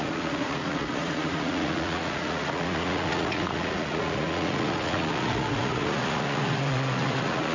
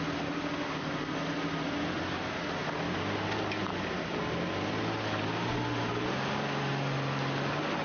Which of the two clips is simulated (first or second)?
first